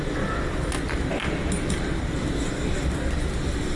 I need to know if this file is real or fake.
real